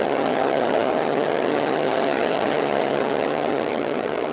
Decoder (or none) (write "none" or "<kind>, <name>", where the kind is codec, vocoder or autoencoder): vocoder, HiFi-GAN